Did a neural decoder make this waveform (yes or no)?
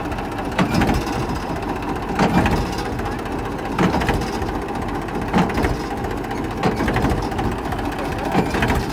no